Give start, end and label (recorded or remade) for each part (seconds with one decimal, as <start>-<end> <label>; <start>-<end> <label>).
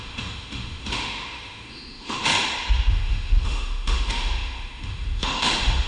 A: 0.0-2.3 remade; 2.3-2.9 recorded; 2.9-5.9 remade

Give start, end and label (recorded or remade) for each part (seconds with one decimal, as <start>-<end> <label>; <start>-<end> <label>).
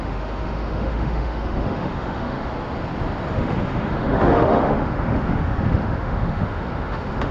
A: 0.0-2.5 remade; 2.5-3.3 recorded; 3.3-7.3 remade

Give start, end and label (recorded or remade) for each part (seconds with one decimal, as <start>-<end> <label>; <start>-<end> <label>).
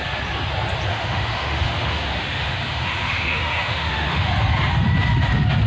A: 0.0-0.9 recorded; 0.9-4.3 remade; 4.3-5.7 recorded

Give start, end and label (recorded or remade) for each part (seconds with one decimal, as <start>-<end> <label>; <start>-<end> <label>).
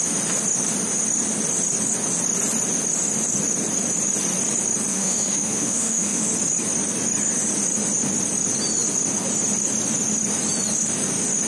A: 0.0-4.9 recorded; 4.9-6.2 remade; 6.2-11.5 recorded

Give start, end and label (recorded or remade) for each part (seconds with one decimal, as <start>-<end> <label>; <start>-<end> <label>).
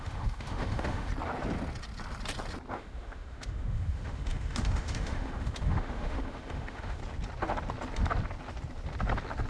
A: 0.0-1.1 remade; 1.1-2.7 recorded; 2.7-7.0 remade; 7.0-9.5 recorded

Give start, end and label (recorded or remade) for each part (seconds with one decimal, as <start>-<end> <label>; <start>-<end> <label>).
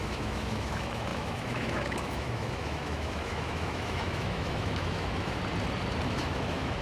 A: 0.0-5.4 remade; 5.4-6.1 recorded; 6.1-6.8 remade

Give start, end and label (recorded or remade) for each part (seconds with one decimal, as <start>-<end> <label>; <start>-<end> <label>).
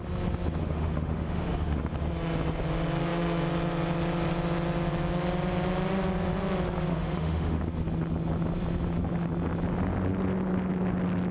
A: 0.0-0.6 recorded; 0.6-1.8 remade; 1.8-6.9 recorded; 6.9-7.6 remade; 7.6-11.3 recorded